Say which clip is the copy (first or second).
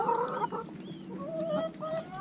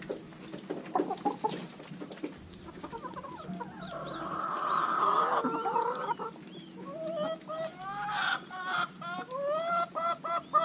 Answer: first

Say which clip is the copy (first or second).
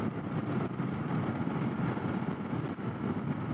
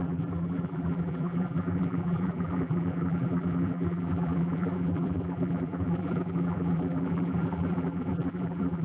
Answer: second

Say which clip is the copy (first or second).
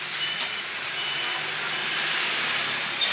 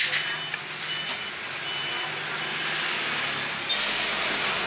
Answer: first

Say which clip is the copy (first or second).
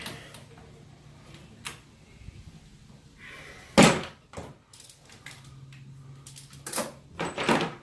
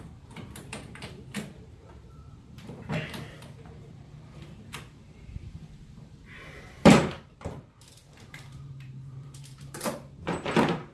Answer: second